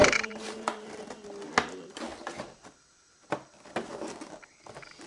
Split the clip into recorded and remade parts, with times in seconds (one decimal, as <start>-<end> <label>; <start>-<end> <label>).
0.0-1.0 remade; 1.0-5.1 recorded